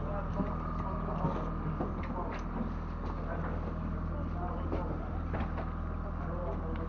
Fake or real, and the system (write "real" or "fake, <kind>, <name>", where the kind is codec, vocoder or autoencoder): real